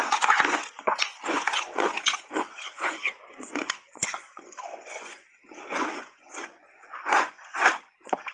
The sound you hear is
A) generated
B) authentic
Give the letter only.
A